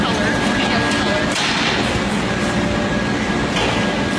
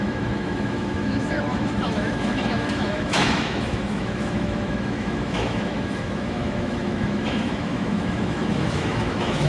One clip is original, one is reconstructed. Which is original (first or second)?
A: first